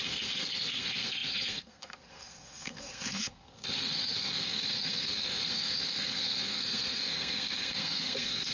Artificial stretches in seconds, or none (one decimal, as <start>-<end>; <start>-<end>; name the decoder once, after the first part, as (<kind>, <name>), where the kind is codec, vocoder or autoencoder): 0.0-8.5 (codec, SNAC)